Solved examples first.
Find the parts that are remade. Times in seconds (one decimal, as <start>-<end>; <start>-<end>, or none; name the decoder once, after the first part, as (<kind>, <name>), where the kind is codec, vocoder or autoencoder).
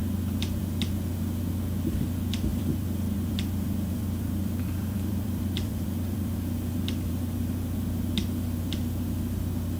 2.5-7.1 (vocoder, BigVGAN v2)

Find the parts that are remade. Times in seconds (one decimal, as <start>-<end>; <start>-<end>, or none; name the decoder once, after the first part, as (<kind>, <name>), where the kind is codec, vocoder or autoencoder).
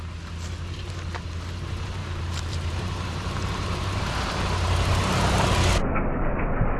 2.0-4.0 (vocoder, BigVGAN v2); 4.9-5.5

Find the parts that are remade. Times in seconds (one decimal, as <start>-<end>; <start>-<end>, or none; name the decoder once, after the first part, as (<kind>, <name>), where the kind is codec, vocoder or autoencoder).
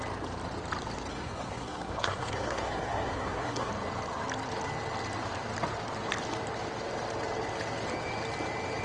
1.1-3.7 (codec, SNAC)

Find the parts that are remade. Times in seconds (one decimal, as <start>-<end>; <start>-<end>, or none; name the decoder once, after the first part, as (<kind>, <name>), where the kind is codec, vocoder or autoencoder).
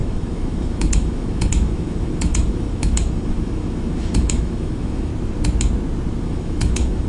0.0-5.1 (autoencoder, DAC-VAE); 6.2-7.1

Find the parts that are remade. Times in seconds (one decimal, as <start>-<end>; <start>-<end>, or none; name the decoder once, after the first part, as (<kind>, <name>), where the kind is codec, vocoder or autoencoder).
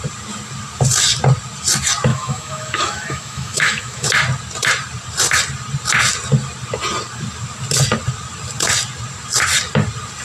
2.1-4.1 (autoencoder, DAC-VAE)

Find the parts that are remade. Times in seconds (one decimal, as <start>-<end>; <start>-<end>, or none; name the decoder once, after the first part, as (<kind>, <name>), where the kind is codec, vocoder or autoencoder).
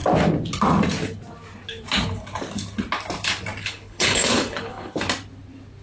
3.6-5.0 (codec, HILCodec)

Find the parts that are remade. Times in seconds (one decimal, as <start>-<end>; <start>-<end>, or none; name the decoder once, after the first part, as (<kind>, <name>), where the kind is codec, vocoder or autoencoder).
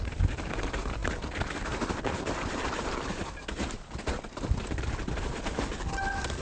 none